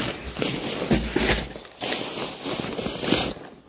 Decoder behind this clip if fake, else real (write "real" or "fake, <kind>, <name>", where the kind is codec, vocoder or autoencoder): real